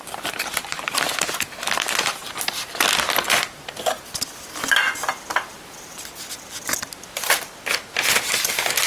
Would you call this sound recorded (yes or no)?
no